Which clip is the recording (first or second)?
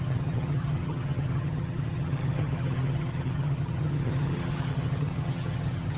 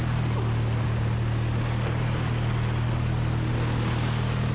second